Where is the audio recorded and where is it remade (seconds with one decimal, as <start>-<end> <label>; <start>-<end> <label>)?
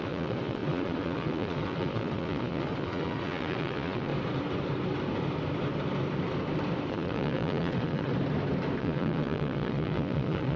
0.0-4.1 remade; 4.1-6.9 recorded; 6.9-8.1 remade; 8.1-8.8 recorded; 8.8-10.6 remade